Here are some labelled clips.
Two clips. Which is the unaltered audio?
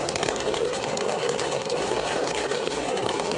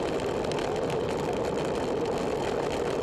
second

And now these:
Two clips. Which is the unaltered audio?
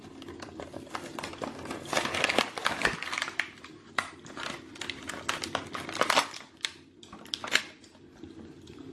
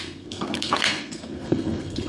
first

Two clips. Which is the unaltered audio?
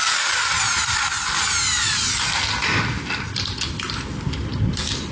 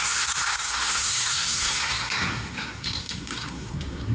first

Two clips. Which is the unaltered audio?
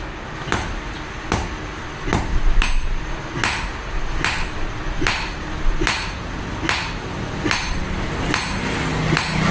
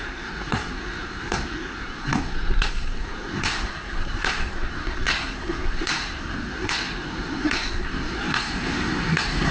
first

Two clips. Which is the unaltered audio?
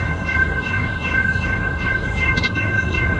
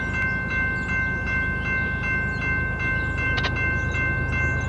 second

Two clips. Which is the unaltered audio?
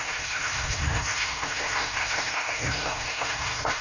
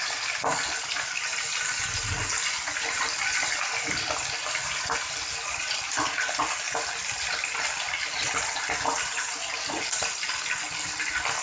second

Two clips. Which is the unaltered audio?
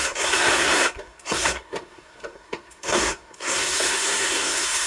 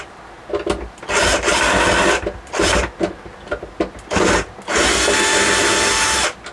second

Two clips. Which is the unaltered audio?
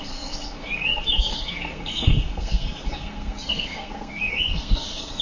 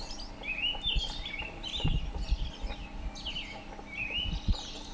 second